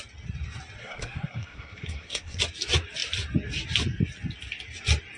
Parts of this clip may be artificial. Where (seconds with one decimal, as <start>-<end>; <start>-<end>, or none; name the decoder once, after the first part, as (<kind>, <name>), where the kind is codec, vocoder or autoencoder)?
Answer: 0.8-2.4 (codec, SNAC)